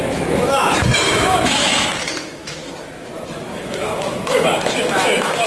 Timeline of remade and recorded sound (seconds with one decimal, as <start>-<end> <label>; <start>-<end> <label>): 0.0-2.6 remade; 2.6-3.3 recorded; 3.3-5.5 remade